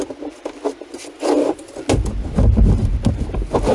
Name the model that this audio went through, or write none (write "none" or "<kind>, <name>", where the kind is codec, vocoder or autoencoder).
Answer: none